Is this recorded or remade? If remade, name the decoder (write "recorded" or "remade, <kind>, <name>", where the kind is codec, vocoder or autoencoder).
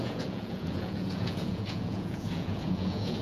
remade, vocoder, Vocos